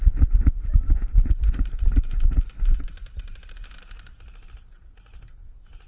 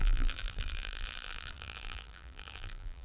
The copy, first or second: second